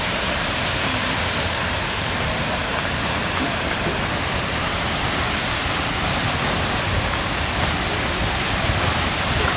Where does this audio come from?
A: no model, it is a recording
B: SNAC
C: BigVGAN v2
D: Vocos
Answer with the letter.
A